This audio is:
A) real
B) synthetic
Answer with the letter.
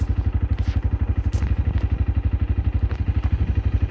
A